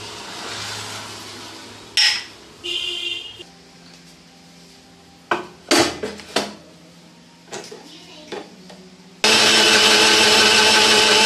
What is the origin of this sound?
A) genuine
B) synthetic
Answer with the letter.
A